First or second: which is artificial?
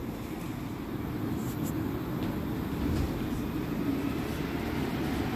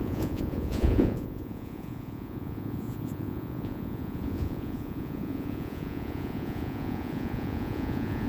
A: second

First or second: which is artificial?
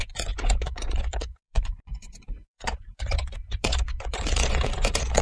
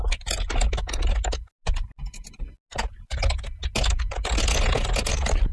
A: first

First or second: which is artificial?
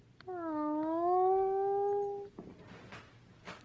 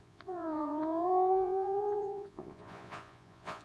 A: second